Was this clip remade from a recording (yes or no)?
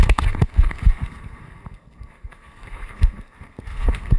yes